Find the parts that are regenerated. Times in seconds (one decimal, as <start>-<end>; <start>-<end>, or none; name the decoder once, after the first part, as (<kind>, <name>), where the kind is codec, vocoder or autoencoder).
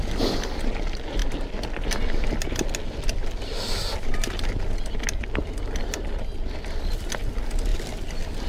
none